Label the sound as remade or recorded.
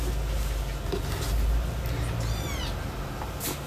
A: recorded